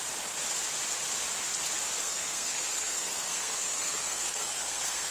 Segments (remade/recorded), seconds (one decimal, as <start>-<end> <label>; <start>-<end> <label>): 0.0-2.0 recorded; 2.0-5.1 remade

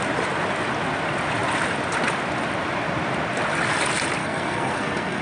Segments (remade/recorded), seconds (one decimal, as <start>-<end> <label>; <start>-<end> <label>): 0.0-4.2 recorded; 4.2-5.2 remade

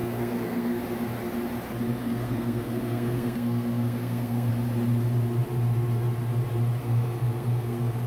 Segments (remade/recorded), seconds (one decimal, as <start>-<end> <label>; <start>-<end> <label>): 0.0-0.8 remade; 0.8-2.0 recorded; 2.0-4.5 remade; 4.5-6.8 recorded; 6.8-8.1 remade